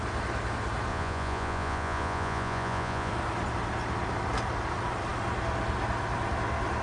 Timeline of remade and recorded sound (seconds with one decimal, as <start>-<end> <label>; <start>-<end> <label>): 0.0-0.9 recorded; 0.9-3.1 remade; 3.1-6.8 recorded